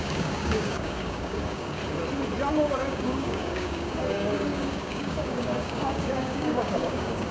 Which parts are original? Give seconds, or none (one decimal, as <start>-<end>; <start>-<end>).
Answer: 1.8-2.5